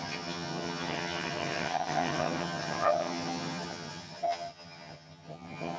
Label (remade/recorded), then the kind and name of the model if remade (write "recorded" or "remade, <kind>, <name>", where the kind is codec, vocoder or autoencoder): remade, vocoder, HiFi-GAN